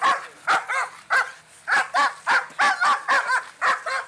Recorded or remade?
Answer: recorded